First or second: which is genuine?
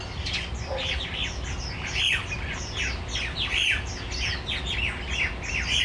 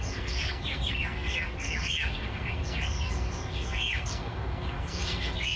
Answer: first